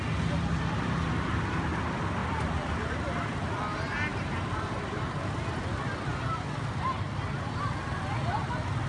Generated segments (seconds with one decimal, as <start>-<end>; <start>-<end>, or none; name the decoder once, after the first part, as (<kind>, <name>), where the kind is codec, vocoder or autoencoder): 4.1-5.0 (vocoder, BigVGAN v2)